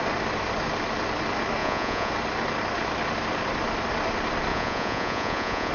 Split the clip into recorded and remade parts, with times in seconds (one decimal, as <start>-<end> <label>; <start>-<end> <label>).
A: 0.0-1.6 recorded; 1.6-2.1 remade; 2.1-4.5 recorded; 4.5-5.7 remade